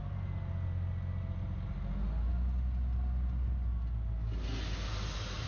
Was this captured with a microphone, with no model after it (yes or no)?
yes